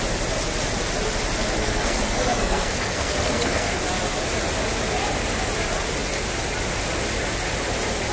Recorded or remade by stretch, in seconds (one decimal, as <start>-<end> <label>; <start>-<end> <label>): 0.0-1.6 recorded; 1.6-3.8 remade; 3.8-8.1 recorded